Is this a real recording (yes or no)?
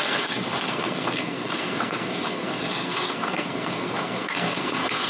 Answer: no